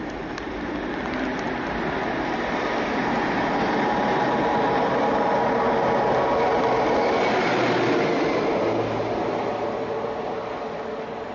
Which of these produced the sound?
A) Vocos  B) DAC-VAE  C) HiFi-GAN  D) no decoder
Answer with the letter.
D